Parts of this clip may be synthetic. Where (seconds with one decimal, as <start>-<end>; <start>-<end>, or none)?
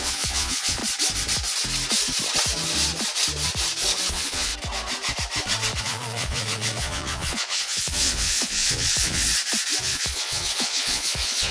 0.0-0.8; 4.1-4.5; 5.8-9.2; 9.8-11.5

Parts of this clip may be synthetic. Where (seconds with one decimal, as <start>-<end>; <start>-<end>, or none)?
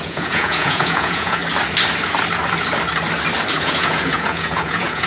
0.0-1.4; 3.5-5.1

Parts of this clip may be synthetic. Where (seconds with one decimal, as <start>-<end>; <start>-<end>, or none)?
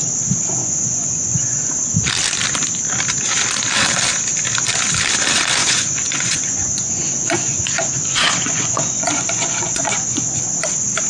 0.6-1.8; 5.6-10.4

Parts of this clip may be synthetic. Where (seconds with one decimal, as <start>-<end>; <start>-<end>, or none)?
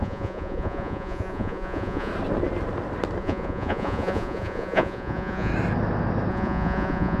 0.0-2.1; 3.2-5.5; 6.3-7.2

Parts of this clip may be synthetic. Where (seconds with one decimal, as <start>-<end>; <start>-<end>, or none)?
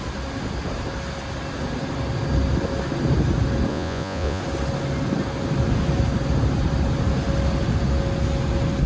3.7-4.4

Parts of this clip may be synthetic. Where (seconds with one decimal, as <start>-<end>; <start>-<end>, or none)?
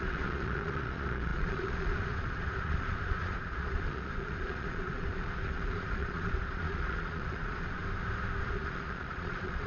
0.0-7.8; 8.4-9.7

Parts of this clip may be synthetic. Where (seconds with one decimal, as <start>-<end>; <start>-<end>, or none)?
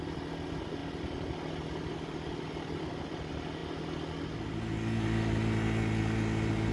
none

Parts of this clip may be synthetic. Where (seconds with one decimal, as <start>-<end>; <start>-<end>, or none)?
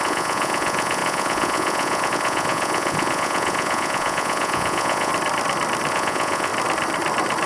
0.0-5.1; 5.9-6.5